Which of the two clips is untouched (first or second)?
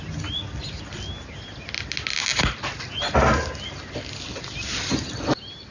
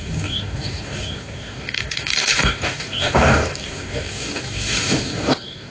first